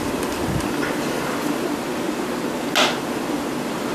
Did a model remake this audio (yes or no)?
no